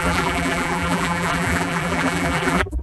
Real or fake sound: fake